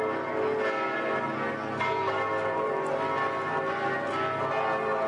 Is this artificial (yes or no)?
no